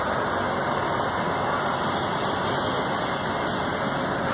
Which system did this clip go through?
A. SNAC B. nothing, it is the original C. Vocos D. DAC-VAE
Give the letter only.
B